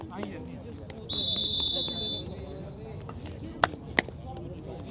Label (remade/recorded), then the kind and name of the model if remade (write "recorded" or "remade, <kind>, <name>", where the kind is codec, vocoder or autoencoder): recorded